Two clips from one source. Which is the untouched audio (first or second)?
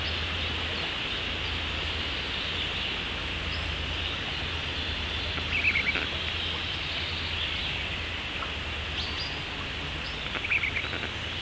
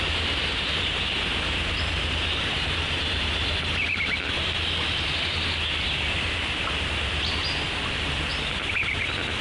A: first